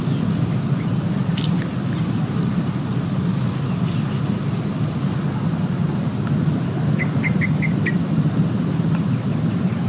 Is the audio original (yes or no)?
yes